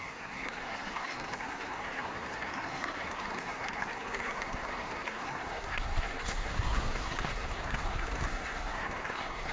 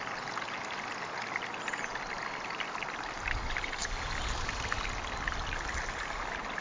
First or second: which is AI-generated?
first